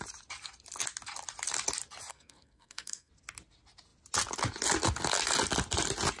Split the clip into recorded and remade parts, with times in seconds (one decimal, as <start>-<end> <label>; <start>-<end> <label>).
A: 0.0-2.1 recorded; 2.1-3.1 remade; 3.1-6.2 recorded